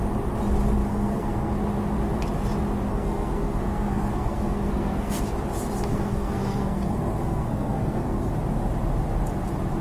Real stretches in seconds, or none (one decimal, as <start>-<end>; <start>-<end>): 0.0-0.8; 1.5-2.9; 5.3-5.9; 8.3-9.8